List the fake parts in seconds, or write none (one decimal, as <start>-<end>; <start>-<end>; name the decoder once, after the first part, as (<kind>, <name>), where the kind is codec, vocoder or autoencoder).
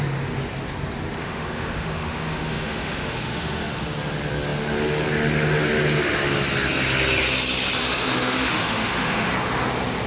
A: 1.2-3.8 (autoencoder, DAC-VAE); 7.8-9.3